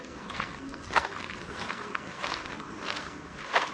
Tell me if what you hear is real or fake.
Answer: fake